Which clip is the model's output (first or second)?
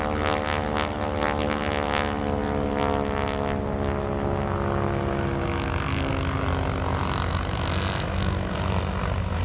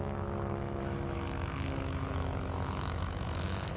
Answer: second